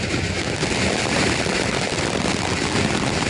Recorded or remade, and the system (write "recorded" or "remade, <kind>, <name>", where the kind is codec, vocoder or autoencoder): recorded